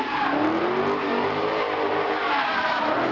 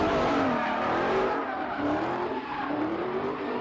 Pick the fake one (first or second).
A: second